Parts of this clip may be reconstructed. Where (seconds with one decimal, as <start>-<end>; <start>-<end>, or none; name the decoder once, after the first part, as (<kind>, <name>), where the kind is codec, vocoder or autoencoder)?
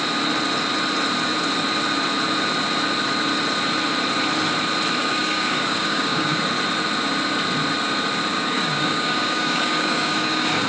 5.0-6.4 (codec, DAC); 8.3-10.7